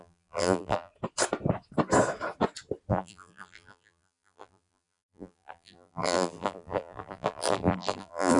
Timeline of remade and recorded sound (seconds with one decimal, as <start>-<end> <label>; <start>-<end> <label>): 0.0-0.9 remade; 0.9-2.9 recorded; 2.9-8.4 remade